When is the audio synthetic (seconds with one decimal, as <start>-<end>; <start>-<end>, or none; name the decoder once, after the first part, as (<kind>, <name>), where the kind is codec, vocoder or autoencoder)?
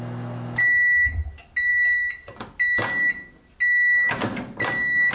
none